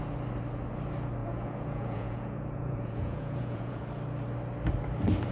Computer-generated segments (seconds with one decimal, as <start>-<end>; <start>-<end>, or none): 1.2-3.8